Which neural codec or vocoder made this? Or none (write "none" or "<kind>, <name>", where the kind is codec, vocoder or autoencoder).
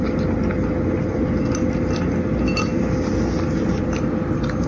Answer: none